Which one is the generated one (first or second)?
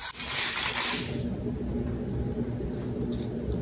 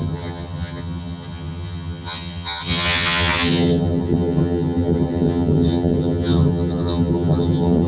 second